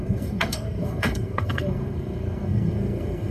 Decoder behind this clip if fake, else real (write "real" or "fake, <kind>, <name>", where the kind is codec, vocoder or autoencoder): fake, codec, SNAC